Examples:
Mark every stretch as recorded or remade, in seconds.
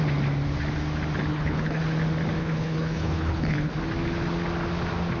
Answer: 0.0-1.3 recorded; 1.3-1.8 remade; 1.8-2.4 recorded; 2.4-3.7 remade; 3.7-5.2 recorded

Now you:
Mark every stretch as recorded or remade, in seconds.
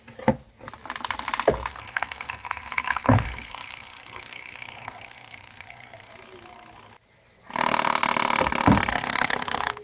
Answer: 0.0-1.7 recorded; 1.7-6.1 remade; 6.1-8.9 recorded; 8.9-9.8 remade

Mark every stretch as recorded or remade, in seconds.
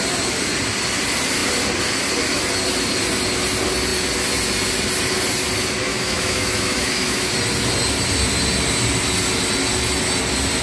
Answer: 0.0-5.9 recorded; 5.9-7.3 remade; 7.3-10.6 recorded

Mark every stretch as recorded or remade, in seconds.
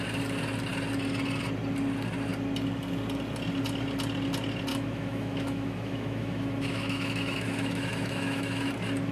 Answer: 0.0-4.7 recorded; 4.7-8.7 remade; 8.7-9.1 recorded